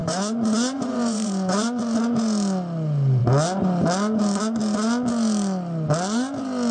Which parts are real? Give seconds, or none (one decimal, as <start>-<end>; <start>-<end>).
1.8-6.7